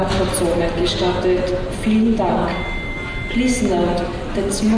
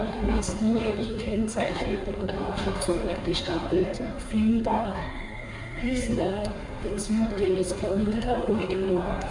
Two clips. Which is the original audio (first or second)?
first